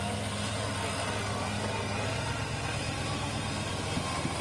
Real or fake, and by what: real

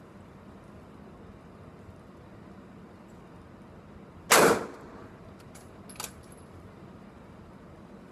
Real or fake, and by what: real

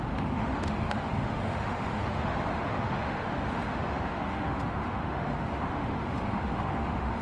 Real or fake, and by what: fake, autoencoder, DAC-VAE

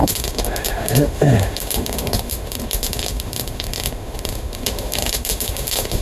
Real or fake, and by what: fake, autoencoder, DAC-VAE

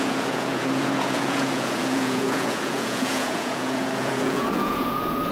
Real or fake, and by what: fake, vocoder, Vocos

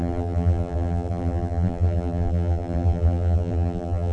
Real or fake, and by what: fake, vocoder, BigVGAN v2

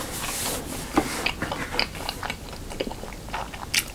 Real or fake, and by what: real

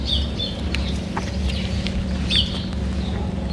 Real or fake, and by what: real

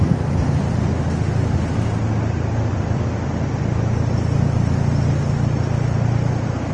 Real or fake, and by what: real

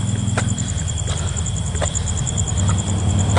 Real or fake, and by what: fake, vocoder, BigVGAN v2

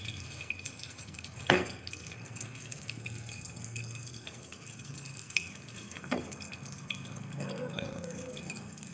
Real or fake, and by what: fake, codec, SNAC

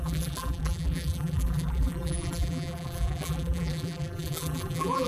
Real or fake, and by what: fake, vocoder, BigVGAN v2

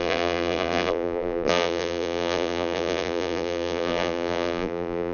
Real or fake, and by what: fake, vocoder, BigVGAN v2